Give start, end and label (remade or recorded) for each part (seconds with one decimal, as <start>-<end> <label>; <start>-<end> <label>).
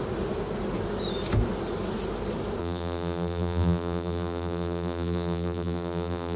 0.0-2.6 recorded; 2.6-6.4 remade